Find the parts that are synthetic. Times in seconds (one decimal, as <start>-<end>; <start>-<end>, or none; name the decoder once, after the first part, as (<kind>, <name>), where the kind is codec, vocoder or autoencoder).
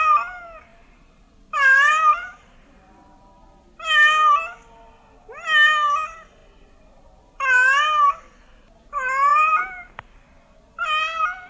0.7-3.3 (vocoder, BigVGAN v2); 9.3-9.9